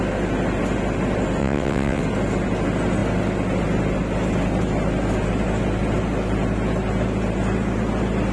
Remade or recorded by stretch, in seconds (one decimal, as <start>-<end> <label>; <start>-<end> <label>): 0.0-1.4 recorded; 1.4-2.0 remade; 2.0-8.3 recorded